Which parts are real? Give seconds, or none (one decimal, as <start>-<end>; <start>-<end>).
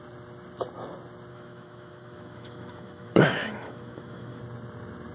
0.0-1.3; 4.4-5.1